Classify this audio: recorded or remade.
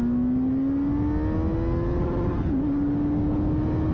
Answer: recorded